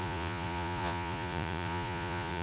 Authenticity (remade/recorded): remade